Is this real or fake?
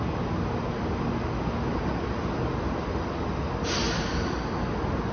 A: real